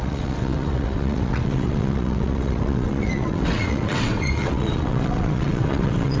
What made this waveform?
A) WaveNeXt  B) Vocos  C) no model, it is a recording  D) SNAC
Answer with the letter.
A